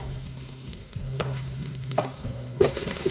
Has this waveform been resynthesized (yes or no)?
yes